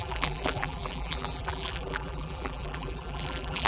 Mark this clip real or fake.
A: fake